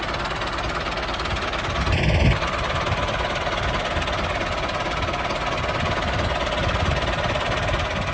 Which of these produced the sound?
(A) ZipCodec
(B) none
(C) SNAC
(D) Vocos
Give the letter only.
B